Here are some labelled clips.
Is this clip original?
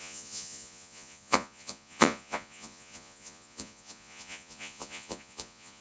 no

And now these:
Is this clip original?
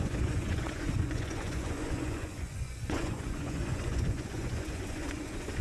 no